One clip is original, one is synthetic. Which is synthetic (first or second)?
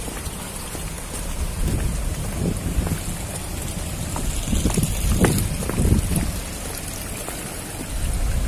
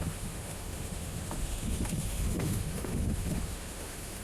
second